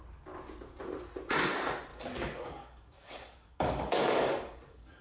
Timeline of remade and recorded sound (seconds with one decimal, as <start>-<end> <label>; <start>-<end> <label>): 0.0-1.9 recorded; 1.9-5.0 remade